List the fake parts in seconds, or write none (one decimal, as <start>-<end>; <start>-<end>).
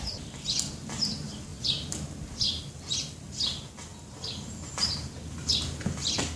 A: none